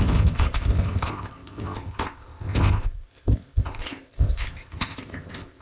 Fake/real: fake